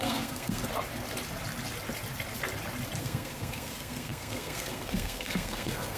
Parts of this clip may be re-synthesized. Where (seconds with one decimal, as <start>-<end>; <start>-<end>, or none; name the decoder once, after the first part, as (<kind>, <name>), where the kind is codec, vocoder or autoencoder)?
0.0-0.6 (codec, SNAC); 3.0-6.0